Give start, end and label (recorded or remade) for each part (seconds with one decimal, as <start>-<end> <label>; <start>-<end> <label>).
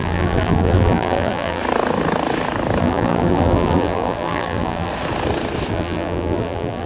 0.0-1.6 remade; 1.6-2.8 recorded; 2.8-4.9 remade; 4.9-5.7 recorded; 5.7-6.9 remade